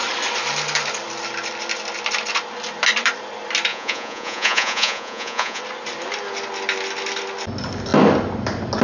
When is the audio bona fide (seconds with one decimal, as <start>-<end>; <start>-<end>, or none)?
0.0-3.7; 5.6-8.8